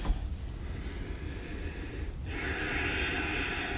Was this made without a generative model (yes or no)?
yes